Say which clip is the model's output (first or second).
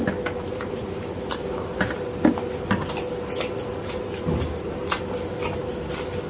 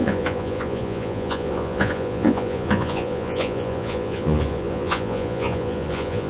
second